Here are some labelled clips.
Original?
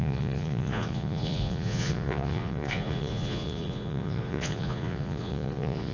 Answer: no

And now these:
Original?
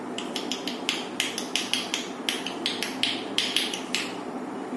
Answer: yes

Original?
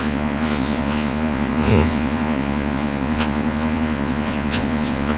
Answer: no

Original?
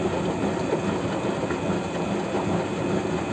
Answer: yes